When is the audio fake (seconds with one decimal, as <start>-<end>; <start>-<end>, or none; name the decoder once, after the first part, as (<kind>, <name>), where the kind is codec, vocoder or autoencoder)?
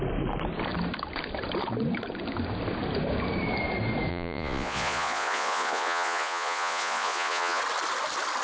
4.1-7.6 (vocoder, Vocos)